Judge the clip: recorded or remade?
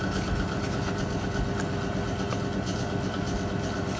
recorded